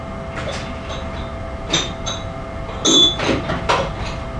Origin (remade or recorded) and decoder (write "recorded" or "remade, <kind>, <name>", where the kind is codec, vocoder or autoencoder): recorded